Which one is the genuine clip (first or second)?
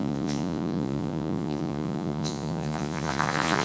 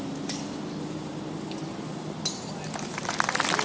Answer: second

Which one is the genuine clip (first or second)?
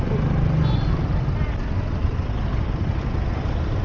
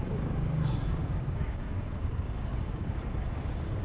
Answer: first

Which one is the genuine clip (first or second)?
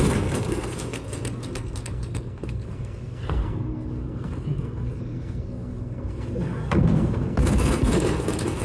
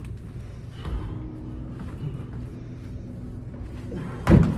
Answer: second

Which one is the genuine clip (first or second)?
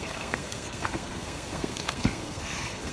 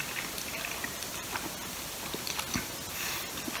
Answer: second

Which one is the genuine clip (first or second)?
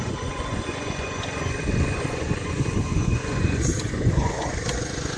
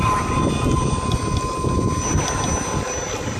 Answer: second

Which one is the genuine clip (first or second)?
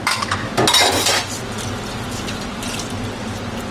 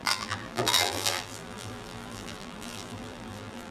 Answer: first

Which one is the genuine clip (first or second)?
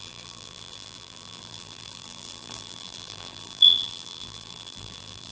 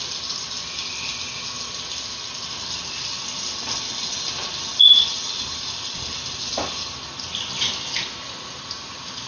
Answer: second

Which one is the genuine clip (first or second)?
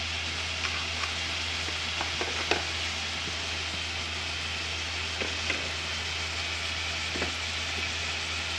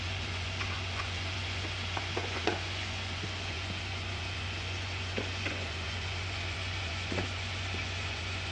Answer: first